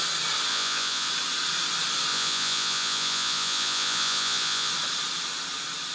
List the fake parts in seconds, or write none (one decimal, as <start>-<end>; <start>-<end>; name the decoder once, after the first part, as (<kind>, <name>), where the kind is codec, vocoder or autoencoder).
0.5-1.1 (vocoder, Vocos); 2.1-4.7

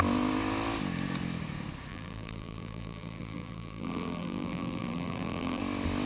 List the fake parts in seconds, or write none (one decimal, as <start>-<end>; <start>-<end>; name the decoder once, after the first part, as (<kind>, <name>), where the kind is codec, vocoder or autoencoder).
1.9-5.6 (vocoder, BigVGAN v2)

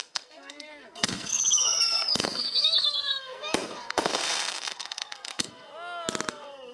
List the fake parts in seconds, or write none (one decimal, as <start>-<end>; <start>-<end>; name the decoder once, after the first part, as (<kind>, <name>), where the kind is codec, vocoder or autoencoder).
0.0-5.7 (codec, SNAC); 6.3-6.7

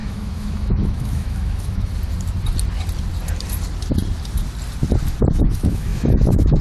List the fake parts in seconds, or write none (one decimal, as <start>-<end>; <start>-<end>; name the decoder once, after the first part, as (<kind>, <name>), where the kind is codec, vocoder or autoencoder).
0.0-1.9 (autoencoder, DAC-VAE); 5.3-6.6

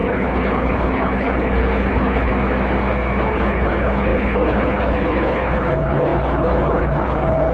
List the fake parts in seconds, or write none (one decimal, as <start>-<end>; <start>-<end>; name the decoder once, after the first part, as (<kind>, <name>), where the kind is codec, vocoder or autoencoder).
0.0-2.3 (codec, HILCodec); 3.3-7.5

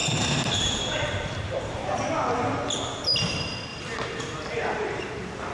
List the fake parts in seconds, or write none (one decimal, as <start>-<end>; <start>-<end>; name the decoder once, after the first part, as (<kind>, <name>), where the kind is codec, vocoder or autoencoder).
0.0-3.3 (vocoder, BigVGAN v2); 3.7-5.1